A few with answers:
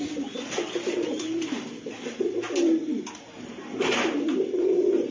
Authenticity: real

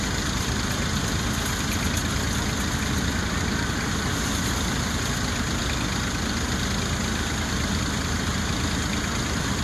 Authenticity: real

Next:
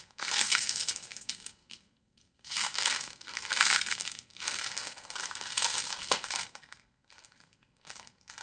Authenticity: fake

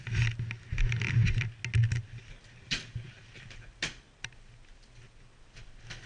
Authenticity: real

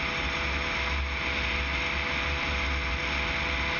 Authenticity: real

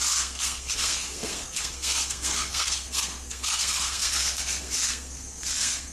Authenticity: fake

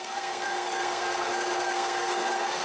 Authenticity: fake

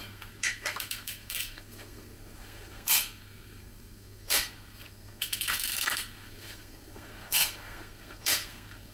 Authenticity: fake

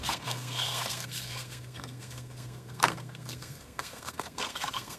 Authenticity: fake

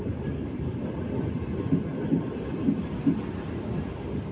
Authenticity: real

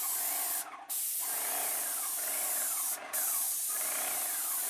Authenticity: real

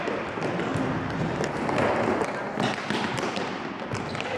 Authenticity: real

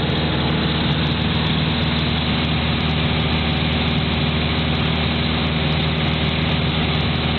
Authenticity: real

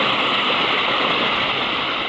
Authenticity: real